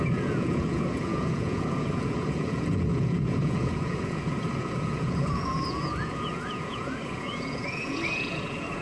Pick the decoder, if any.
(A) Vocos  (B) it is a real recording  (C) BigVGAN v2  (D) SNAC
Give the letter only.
A